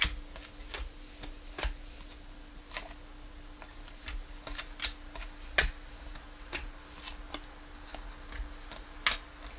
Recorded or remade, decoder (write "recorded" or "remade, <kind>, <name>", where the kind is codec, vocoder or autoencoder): recorded